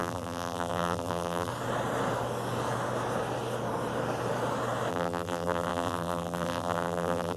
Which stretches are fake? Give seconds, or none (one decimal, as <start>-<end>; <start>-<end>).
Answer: 0.0-1.5; 4.9-7.4